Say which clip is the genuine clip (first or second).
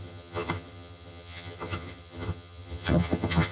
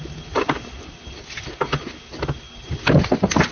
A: second